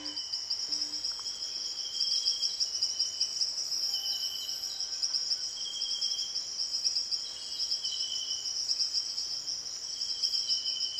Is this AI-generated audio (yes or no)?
no